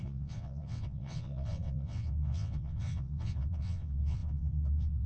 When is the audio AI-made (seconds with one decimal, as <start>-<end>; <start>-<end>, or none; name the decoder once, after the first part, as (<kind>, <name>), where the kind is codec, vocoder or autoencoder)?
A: 0.0-5.1 (vocoder, WaveNeXt)